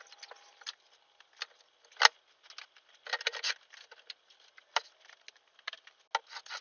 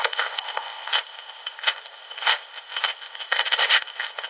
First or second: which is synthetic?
second